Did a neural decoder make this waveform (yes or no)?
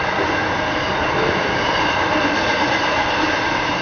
no